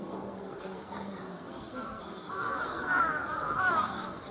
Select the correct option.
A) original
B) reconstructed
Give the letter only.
B